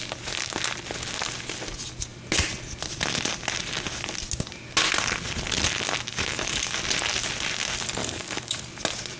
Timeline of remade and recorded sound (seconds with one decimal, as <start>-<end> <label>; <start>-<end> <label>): 0.0-6.1 recorded; 6.1-6.8 remade; 6.8-8.0 recorded; 8.0-8.6 remade; 8.6-9.2 recorded